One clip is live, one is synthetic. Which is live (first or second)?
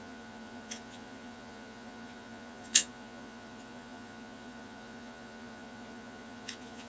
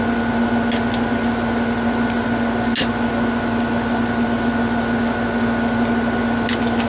second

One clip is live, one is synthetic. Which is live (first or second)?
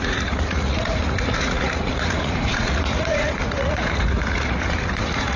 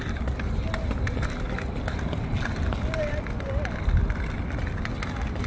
second